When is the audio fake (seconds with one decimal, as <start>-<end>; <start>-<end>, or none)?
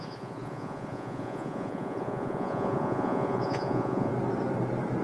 0.0-4.1